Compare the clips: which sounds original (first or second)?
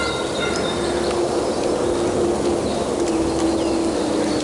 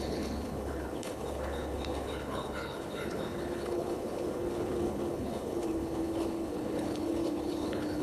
first